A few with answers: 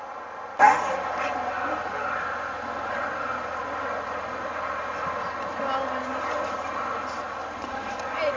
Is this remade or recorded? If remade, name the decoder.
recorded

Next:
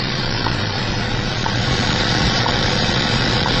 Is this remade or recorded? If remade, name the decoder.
remade, vocoder, Vocos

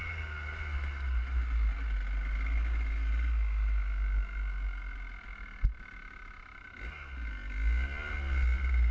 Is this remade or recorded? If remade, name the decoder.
recorded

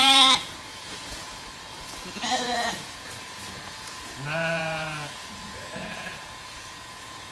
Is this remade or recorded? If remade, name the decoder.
remade, vocoder, Vocos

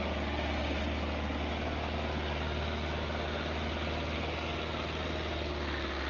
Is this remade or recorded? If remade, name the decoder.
recorded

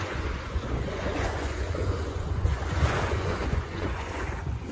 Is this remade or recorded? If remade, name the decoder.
remade, vocoder, Vocos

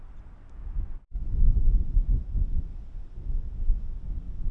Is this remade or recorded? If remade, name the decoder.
recorded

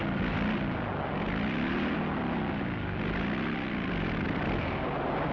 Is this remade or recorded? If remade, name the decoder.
recorded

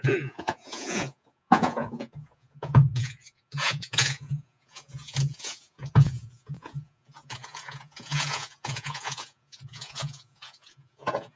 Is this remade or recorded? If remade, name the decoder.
remade, vocoder, Vocos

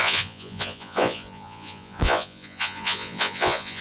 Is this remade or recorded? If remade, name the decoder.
remade, vocoder, Vocos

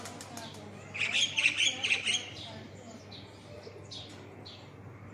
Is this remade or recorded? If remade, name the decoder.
recorded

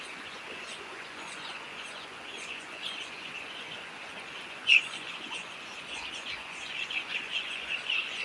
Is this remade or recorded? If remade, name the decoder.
remade, vocoder, Vocos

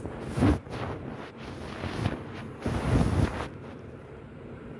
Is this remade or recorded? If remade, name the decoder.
recorded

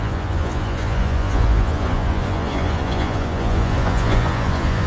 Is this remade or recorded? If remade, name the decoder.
remade, vocoder, Vocos